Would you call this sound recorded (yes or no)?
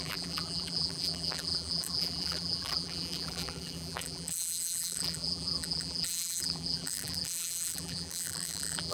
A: no